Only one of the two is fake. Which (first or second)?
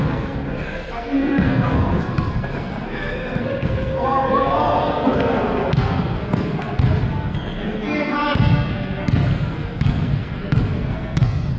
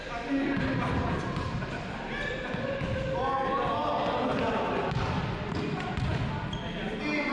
first